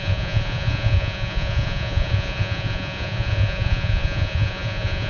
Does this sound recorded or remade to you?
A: remade